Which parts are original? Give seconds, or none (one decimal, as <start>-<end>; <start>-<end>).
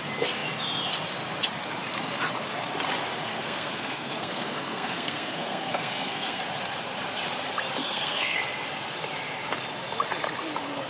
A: 0.0-3.3; 6.4-7.8; 8.4-10.9